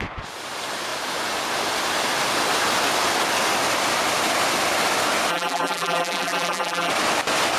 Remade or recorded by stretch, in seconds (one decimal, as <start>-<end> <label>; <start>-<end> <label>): 0.0-5.3 recorded; 5.3-6.9 remade; 6.9-7.6 recorded